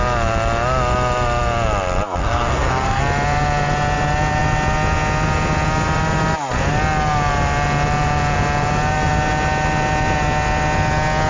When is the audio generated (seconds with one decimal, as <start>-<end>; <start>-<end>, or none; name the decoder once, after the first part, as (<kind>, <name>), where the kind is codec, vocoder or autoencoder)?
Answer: 2.2-3.0 (codec, SNAC)